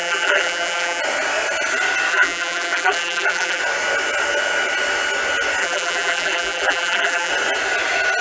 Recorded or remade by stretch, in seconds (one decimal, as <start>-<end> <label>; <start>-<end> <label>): 0.0-1.0 remade; 1.0-2.1 recorded; 2.1-3.6 remade; 3.6-5.6 recorded; 5.6-7.3 remade; 7.3-8.2 recorded